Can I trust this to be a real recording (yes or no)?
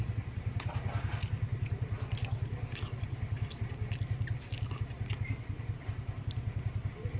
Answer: yes